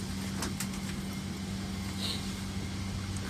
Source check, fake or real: real